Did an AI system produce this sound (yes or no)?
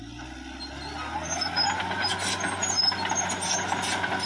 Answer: no